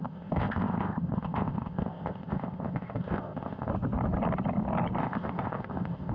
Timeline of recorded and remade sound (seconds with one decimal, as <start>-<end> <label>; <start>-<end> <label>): 0.0-3.7 remade; 3.7-5.0 recorded; 5.0-6.1 remade